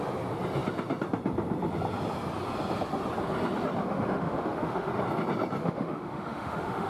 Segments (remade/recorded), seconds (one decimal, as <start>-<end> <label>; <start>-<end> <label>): 0.0-3.8 recorded; 3.8-4.9 remade; 4.9-5.6 recorded; 5.6-6.9 remade